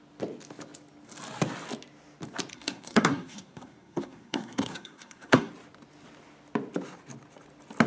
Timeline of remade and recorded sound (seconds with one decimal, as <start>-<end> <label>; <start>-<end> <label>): 0.0-2.5 recorded; 2.5-5.5 remade; 5.5-7.9 recorded